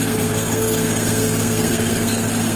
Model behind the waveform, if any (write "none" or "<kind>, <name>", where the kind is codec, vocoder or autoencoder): codec, SNAC